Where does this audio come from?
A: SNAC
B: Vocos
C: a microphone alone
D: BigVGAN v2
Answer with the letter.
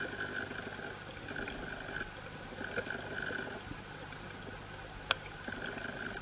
C